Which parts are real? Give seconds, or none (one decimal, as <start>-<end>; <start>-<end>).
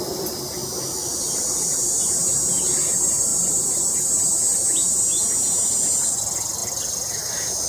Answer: 0.6-1.1; 4.6-5.9; 6.6-7.7